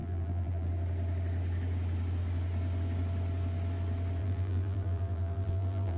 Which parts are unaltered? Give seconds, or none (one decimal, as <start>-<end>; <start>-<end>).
0.7-4.2